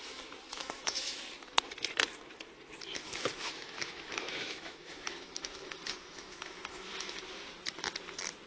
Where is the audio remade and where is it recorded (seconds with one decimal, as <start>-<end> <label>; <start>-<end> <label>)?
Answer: 0.0-0.5 recorded; 0.5-1.2 remade; 1.2-3.0 recorded; 3.0-7.2 remade; 7.2-8.5 recorded

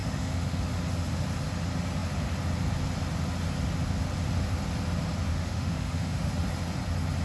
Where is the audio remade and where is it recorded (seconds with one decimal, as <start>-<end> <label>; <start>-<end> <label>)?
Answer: 0.0-0.6 remade; 0.6-5.3 recorded; 5.3-6.3 remade; 6.3-7.2 recorded

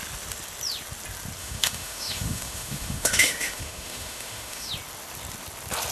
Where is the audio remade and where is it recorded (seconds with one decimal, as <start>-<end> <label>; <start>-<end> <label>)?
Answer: 0.0-1.4 recorded; 1.4-4.7 remade; 4.7-5.9 recorded

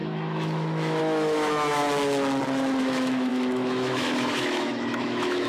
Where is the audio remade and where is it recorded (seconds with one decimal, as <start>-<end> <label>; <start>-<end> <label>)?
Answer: 0.0-1.8 remade; 1.8-2.8 recorded; 2.8-5.5 remade

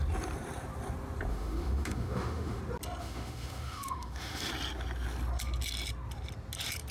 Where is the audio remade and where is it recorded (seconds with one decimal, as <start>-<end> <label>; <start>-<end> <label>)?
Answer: 0.0-1.3 recorded; 1.3-2.6 remade; 2.6-3.0 recorded; 3.0-4.5 remade; 4.5-6.9 recorded

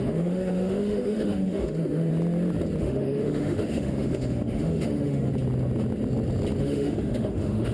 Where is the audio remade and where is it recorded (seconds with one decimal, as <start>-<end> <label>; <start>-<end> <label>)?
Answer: 0.0-2.1 remade; 2.1-2.8 recorded; 2.8-5.3 remade; 5.3-6.6 recorded; 6.6-7.7 remade